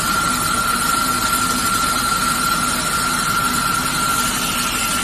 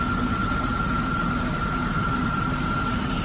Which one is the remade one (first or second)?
second